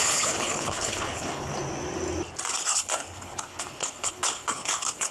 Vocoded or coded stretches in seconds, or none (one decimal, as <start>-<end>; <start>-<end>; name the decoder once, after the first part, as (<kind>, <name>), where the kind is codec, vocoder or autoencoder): 0.0-1.5 (codec, HILCodec); 2.6-5.1

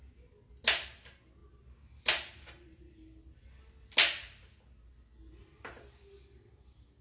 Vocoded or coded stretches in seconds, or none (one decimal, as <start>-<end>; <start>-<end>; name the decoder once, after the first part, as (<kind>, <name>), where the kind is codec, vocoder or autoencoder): none

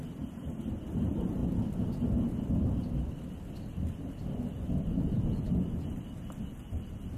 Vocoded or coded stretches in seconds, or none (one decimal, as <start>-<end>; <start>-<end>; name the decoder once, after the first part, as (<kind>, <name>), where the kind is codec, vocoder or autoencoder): none

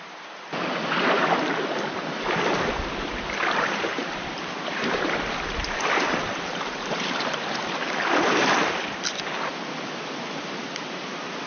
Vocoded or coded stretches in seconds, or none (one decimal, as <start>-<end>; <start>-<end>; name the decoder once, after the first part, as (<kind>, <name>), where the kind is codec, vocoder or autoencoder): 0.0-11.5 (vocoder, BigVGAN v2)

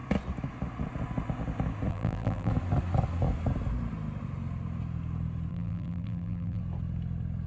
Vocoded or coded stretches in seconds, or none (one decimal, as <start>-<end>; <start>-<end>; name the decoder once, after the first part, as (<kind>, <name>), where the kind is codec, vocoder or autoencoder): 1.9-2.5 (vocoder, BigVGAN v2); 5.5-6.6

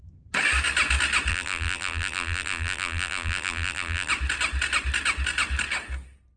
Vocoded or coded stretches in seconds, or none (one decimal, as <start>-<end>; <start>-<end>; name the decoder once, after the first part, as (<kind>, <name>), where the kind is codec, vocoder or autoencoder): 1.3-4.1 (vocoder, BigVGAN v2)

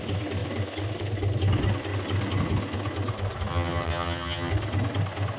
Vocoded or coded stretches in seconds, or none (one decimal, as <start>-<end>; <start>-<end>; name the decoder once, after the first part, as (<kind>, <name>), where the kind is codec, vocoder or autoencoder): 3.5-4.5 (vocoder, HiFi-GAN)